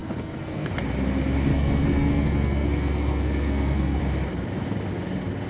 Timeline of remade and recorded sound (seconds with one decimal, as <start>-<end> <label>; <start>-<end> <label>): 0.0-0.7 remade; 0.7-1.5 recorded; 1.5-4.0 remade; 4.0-5.5 recorded